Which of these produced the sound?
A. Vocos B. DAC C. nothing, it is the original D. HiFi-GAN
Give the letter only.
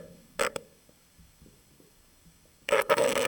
B